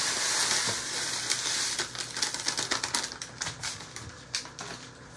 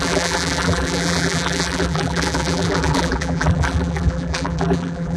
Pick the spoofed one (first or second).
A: second